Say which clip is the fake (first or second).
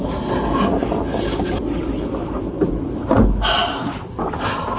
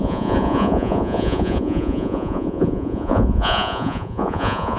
second